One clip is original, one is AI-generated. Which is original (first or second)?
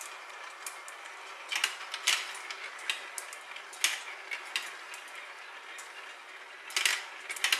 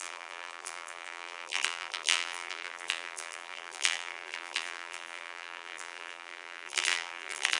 first